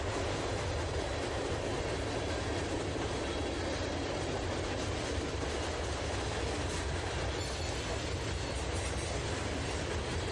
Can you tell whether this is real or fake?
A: real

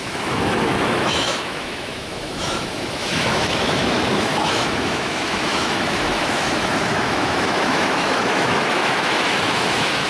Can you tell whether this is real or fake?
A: fake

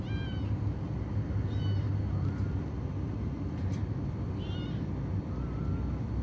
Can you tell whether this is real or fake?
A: real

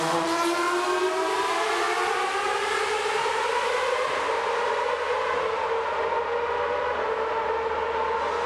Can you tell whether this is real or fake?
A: real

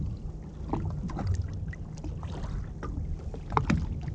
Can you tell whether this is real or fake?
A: real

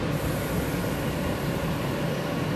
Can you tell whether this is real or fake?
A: real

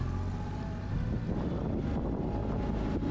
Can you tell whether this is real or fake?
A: real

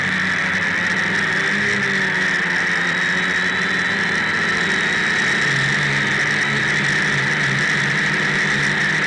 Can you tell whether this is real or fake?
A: real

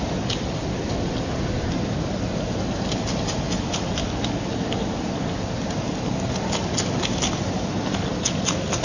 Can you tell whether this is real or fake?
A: real